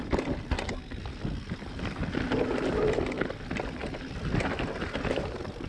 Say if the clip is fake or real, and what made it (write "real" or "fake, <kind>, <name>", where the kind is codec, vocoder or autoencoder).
real